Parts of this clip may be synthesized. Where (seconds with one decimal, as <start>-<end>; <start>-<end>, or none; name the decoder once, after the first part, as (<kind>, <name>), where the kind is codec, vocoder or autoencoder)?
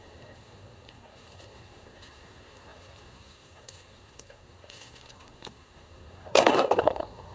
0.0-7.3 (codec, SNAC)